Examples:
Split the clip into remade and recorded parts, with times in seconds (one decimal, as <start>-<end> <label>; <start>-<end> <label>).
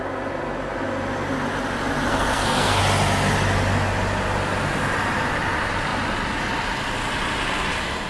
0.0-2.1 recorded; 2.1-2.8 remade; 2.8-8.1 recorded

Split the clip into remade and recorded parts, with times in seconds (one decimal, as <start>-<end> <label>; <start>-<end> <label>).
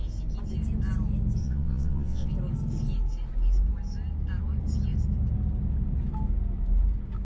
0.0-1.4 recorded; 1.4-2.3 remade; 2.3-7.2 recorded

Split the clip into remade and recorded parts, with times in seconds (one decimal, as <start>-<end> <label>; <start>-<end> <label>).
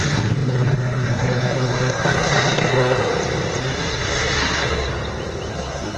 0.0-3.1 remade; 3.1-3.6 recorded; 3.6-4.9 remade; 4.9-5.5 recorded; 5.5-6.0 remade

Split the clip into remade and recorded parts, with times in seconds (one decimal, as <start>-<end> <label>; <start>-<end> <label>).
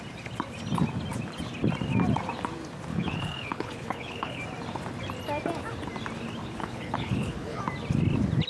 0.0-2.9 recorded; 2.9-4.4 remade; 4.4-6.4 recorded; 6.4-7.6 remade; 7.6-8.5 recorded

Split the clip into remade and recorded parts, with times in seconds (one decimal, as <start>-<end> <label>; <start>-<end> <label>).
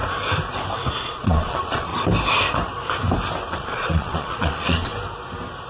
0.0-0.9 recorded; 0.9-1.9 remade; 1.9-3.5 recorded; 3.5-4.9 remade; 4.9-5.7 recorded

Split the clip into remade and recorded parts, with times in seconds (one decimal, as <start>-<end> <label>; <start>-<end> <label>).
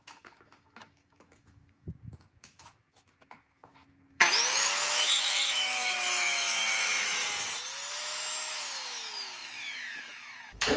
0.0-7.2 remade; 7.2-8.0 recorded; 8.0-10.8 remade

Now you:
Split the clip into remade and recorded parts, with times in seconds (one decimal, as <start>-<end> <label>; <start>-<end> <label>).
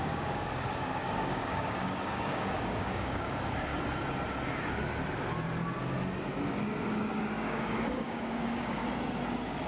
0.0-3.7 remade; 3.7-6.9 recorded; 6.9-8.8 remade; 8.8-9.7 recorded